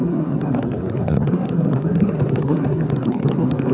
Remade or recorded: remade